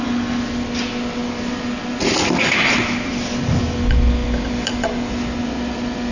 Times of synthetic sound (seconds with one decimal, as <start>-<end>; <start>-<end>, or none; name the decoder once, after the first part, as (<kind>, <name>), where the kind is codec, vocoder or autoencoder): none